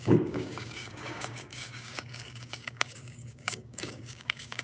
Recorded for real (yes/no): no